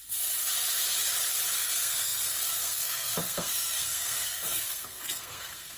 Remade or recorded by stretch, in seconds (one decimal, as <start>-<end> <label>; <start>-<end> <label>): 0.0-1.6 recorded; 1.6-5.8 remade